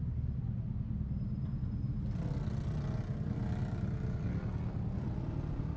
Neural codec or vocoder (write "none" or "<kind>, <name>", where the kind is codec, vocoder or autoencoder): none